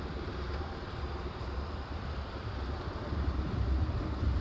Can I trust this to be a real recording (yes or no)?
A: yes